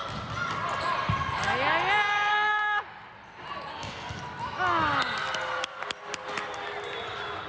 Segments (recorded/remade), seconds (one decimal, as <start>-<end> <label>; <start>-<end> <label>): 0.0-2.3 recorded; 2.3-2.8 remade; 2.8-3.7 recorded; 3.7-4.2 remade; 4.2-7.5 recorded